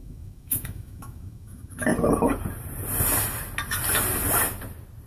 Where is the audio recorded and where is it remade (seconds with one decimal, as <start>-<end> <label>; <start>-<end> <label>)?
0.0-1.9 remade; 1.9-5.1 recorded